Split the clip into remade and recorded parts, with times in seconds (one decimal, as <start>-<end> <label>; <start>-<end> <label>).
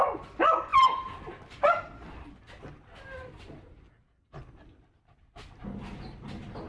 0.0-6.7 recorded